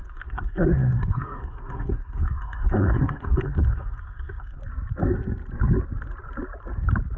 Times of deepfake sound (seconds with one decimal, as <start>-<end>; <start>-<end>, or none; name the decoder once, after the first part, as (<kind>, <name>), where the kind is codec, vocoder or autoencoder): 0.0-4.6 (codec, SNAC)